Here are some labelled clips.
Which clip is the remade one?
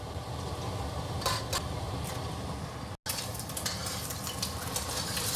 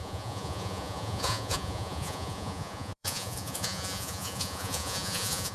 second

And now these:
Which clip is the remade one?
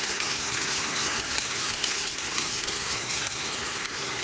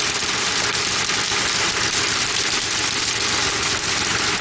first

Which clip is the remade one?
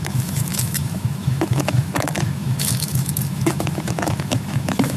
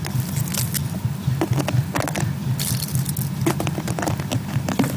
first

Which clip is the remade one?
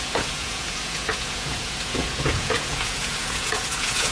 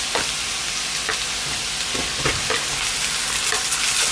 first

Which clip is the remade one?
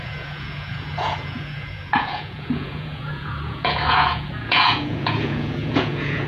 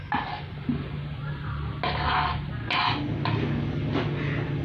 first